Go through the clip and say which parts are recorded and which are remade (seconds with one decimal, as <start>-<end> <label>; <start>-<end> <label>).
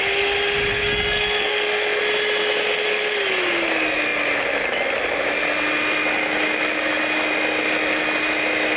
0.0-0.7 recorded; 0.7-2.0 remade; 2.0-8.8 recorded